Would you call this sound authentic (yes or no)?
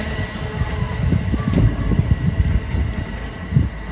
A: yes